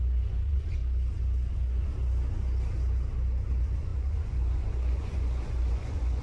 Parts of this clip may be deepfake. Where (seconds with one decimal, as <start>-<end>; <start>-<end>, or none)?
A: 0.0-0.8; 1.5-1.9; 3.5-6.2